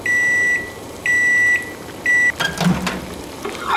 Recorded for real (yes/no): yes